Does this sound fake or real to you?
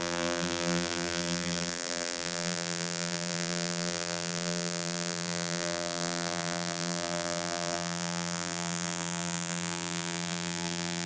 fake